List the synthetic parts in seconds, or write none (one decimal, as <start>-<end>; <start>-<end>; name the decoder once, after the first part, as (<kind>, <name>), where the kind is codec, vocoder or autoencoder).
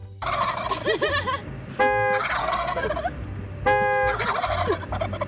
2.4-2.9 (codec, SNAC)